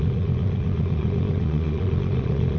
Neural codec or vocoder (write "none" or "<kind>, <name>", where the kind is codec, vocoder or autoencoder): vocoder, Vocos